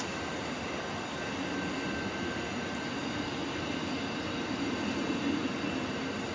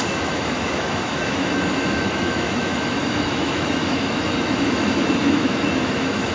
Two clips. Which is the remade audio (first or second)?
second